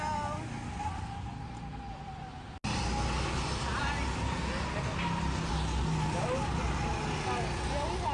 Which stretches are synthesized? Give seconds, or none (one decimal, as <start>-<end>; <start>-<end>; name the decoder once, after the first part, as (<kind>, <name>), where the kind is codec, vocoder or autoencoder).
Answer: none